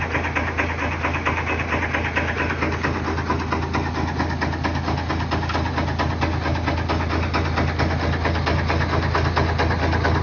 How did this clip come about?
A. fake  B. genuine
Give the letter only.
B